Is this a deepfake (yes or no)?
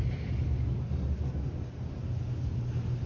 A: no